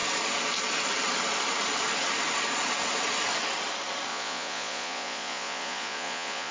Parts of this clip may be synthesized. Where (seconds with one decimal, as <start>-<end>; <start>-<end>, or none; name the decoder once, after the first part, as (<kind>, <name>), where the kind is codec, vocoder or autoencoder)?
4.1-6.5 (vocoder, Vocos)